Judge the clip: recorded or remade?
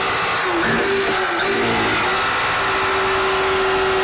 recorded